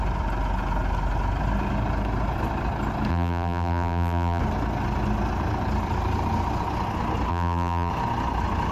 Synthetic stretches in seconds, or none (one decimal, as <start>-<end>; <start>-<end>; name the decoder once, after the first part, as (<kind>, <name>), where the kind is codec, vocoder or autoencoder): 3.1-4.4 (vocoder, BigVGAN v2); 7.3-7.9

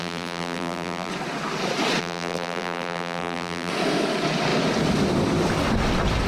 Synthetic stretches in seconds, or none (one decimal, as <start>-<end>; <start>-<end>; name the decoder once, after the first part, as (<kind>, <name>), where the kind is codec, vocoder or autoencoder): 0.0-1.1 (vocoder, BigVGAN v2); 2.0-3.7